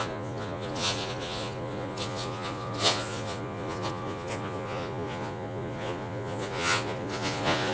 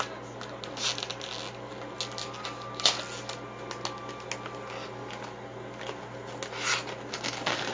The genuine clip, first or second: second